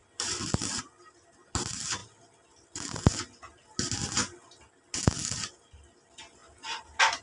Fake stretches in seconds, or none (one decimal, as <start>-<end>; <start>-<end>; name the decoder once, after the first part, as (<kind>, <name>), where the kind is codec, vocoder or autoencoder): 6.4-7.2 (vocoder, BigVGAN v2)